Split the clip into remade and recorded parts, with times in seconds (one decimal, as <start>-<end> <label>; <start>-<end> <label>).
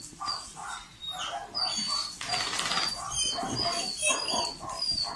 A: 0.0-5.2 recorded